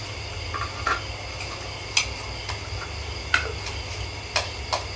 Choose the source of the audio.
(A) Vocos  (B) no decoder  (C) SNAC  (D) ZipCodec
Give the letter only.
B